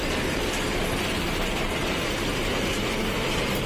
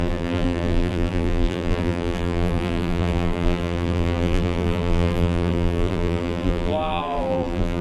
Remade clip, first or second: second